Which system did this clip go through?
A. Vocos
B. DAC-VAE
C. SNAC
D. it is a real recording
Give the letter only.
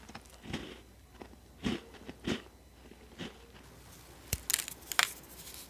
D